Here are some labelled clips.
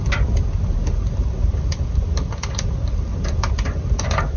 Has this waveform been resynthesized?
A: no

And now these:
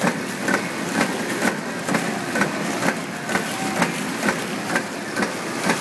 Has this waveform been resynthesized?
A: no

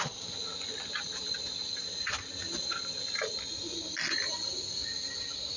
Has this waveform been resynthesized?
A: no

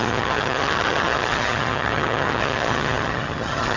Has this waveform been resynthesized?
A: yes